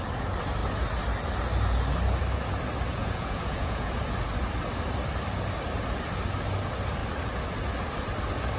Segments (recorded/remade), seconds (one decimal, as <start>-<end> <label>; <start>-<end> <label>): 0.0-3.0 recorded; 3.0-3.9 remade; 3.9-8.6 recorded